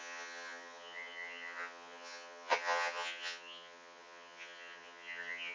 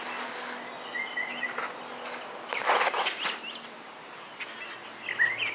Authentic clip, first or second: second